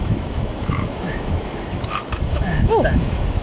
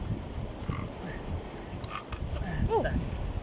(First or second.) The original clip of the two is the second